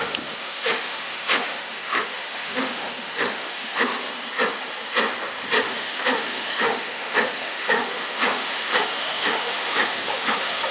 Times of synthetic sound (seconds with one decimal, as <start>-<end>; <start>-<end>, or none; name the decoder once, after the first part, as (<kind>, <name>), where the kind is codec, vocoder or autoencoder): 0.0-3.9 (autoencoder, DAC-VAE); 5.6-10.7